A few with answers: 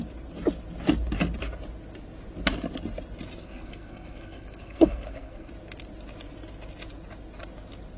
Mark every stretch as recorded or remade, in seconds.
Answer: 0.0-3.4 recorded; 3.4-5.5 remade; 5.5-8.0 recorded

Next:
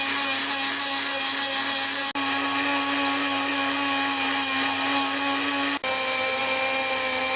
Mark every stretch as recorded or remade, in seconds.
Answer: 0.0-7.4 recorded